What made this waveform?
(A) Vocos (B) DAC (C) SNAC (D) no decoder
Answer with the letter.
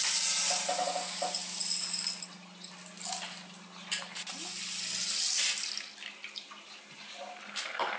D